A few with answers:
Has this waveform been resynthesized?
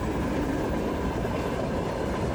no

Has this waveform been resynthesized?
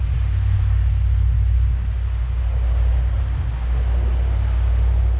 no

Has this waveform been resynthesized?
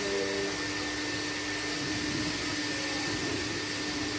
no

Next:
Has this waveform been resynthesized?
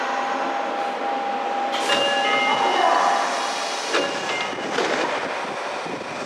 no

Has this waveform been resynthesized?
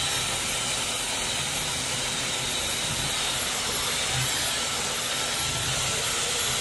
no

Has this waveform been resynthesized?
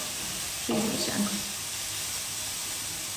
no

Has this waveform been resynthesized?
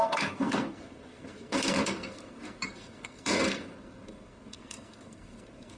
yes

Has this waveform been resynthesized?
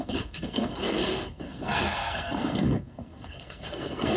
yes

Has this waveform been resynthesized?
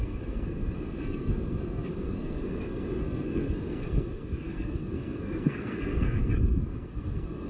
yes